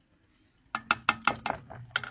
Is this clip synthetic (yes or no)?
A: no